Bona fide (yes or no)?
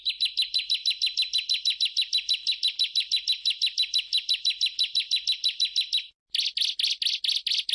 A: yes